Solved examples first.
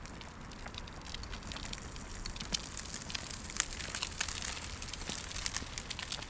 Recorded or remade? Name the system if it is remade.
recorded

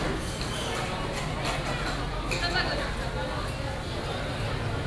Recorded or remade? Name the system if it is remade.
recorded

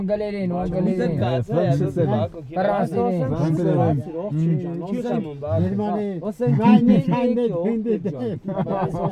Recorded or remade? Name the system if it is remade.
recorded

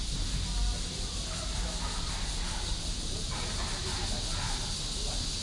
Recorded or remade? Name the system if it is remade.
recorded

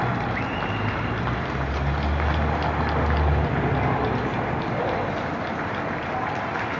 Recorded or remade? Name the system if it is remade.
recorded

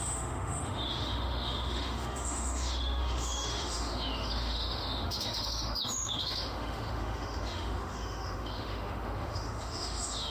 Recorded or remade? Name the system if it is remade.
remade, autoencoder, DAC-VAE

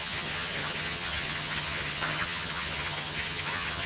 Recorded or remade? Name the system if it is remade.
remade, vocoder, HiFi-GAN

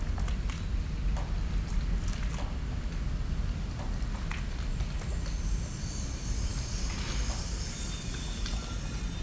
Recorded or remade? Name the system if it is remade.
recorded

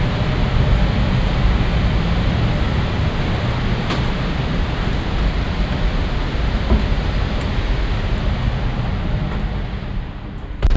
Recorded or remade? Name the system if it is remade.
recorded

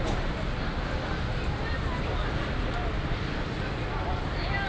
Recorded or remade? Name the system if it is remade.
recorded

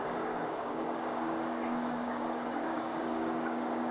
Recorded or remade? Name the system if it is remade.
remade, codec, DAC